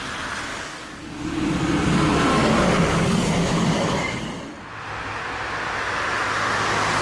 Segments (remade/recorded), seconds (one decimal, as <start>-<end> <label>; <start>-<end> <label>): 0.0-0.5 recorded; 0.5-1.5 remade; 1.5-2.3 recorded; 2.3-4.2 remade; 4.2-7.0 recorded